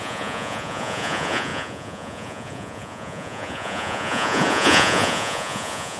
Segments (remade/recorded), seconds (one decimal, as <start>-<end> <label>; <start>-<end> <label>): 0.0-6.0 remade